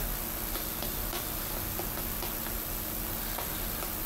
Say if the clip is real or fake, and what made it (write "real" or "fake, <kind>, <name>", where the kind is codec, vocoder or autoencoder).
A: real